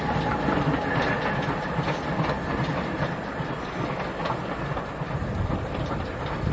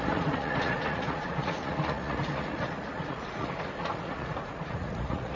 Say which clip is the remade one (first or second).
second